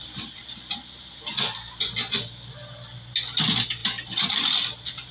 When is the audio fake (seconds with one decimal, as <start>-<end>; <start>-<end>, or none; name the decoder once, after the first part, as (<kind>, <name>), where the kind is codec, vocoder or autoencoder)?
none